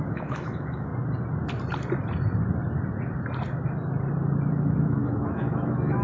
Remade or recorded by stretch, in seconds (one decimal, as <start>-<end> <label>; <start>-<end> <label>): 0.0-0.9 remade; 0.9-4.5 recorded; 4.5-6.0 remade